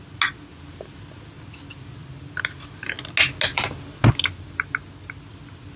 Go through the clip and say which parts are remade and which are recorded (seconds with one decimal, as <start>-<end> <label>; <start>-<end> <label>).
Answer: 0.0-5.8 recorded